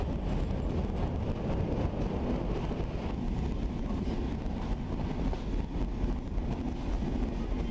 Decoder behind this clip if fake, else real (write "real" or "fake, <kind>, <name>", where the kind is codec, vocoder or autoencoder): real